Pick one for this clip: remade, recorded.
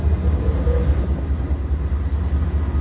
recorded